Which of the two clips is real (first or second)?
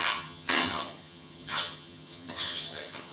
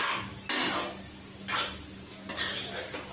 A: second